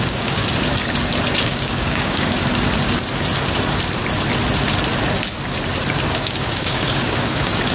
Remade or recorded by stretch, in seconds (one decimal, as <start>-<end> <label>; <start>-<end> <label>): 0.0-0.4 remade; 0.4-1.4 recorded; 1.4-2.4 remade; 2.4-6.1 recorded; 6.1-7.7 remade